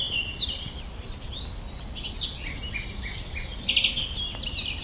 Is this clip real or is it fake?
real